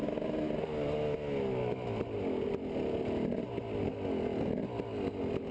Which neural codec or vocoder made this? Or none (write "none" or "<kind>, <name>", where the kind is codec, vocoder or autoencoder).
none